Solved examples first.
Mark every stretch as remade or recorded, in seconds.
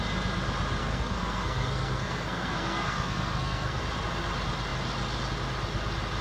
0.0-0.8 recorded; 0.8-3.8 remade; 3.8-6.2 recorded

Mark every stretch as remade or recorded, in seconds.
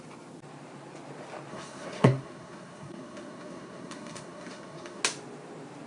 0.0-1.5 recorded; 1.5-5.0 remade; 5.0-5.9 recorded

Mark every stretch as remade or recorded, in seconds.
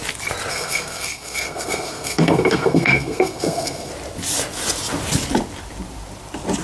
0.0-0.5 recorded; 0.5-3.9 remade; 3.9-6.6 recorded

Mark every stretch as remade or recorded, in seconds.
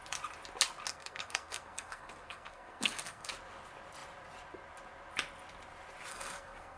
0.0-0.9 recorded; 0.9-3.3 remade; 3.3-6.1 recorded; 6.1-6.8 remade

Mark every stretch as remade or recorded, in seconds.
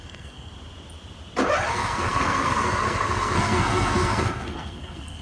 0.0-0.5 remade; 0.5-1.7 recorded; 1.7-5.2 remade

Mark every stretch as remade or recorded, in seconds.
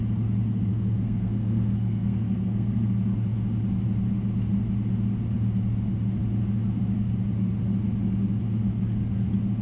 0.0-0.7 recorded; 0.7-2.9 remade; 2.9-9.6 recorded